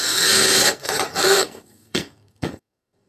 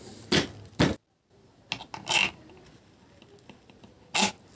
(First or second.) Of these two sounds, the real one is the second